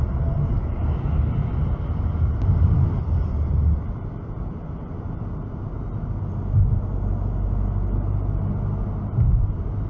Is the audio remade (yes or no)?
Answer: no